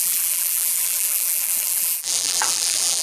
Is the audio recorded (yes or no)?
no